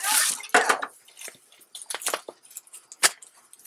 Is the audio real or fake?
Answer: real